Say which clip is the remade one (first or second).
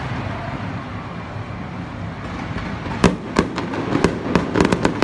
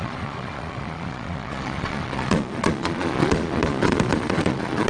second